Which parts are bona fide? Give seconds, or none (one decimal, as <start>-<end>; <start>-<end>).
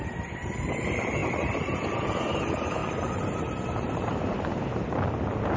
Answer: 0.0-2.8; 4.9-5.6